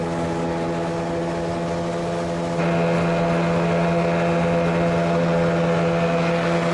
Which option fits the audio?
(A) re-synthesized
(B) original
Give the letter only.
B